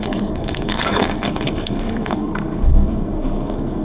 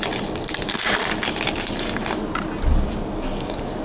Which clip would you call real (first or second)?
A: second